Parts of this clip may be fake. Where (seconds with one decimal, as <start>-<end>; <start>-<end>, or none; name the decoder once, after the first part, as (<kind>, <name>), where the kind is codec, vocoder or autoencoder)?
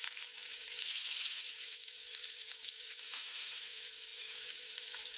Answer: 0.0-5.2 (autoencoder, DAC-VAE)